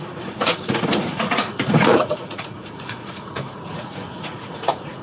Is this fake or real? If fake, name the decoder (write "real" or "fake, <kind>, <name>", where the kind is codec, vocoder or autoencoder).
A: fake, vocoder, Vocos